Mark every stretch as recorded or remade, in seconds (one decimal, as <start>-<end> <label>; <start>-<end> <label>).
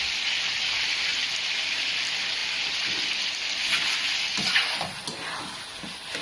0.0-6.2 recorded